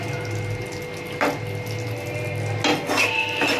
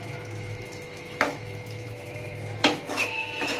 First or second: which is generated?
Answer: second